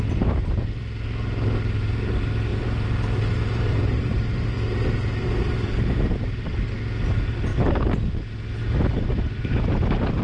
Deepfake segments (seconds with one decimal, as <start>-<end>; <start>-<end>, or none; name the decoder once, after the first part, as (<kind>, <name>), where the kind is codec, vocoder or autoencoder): 2.5-6.4 (vocoder, BigVGAN v2); 8.6-10.2